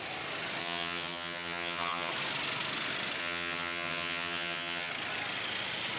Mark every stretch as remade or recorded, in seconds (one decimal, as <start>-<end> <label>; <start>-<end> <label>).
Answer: 0.0-0.6 recorded; 0.6-2.1 remade; 2.1-3.2 recorded; 3.2-4.9 remade; 4.9-6.0 recorded